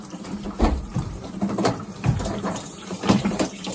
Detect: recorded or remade remade